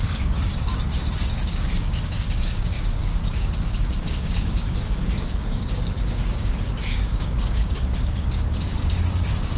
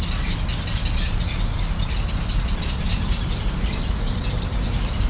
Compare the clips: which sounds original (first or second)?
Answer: second